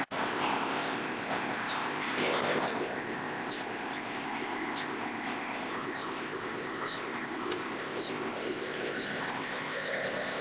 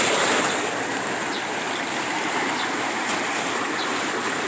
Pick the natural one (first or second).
second